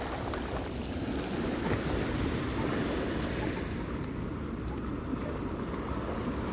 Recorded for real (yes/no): yes